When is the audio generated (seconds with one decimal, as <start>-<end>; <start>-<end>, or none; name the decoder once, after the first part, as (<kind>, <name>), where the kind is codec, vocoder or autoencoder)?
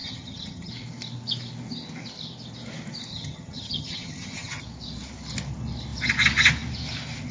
0.0-0.7 (vocoder, HiFi-GAN); 3.1-4.6